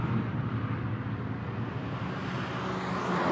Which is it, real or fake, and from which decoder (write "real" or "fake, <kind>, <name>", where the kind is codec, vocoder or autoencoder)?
real